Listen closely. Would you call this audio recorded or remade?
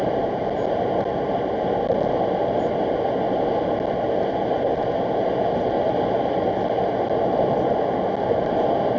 recorded